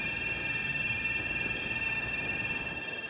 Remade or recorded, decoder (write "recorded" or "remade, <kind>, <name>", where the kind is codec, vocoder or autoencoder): remade, codec, DAC